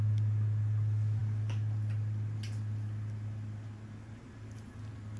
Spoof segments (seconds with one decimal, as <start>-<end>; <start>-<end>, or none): none